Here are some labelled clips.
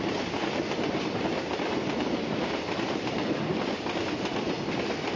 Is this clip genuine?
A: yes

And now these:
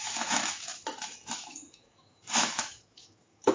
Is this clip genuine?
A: no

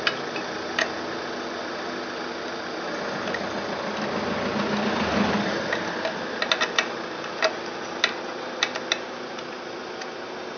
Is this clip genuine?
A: yes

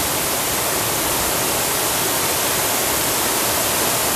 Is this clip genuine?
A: yes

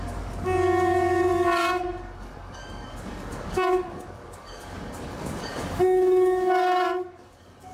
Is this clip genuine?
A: no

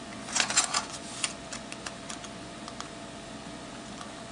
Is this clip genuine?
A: no